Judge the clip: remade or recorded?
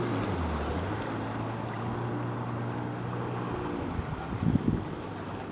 recorded